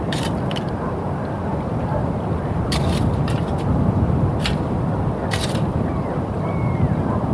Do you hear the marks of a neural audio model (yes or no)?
yes